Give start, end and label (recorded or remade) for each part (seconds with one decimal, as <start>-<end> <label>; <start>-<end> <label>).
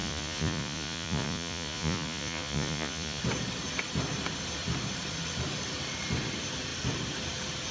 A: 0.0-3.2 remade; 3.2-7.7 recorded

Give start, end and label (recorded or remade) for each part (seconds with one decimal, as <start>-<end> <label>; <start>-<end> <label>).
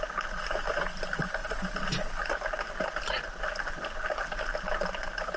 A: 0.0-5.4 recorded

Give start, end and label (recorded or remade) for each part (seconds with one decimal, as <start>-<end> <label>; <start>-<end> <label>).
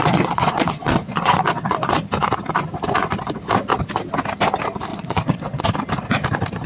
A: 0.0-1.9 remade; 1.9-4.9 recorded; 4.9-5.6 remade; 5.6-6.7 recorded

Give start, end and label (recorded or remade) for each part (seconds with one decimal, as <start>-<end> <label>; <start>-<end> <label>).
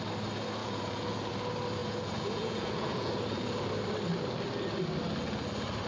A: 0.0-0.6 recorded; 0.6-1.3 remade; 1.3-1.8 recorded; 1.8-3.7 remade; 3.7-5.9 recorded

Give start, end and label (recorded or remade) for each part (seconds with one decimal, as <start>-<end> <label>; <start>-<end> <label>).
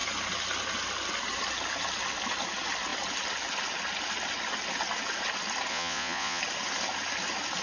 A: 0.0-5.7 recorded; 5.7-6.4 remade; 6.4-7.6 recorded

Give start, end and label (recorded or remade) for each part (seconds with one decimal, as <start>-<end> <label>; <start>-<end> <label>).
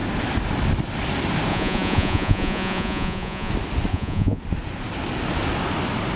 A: 0.0-1.5 recorded; 1.5-3.5 remade; 3.5-3.9 recorded; 3.9-4.4 remade; 4.4-6.2 recorded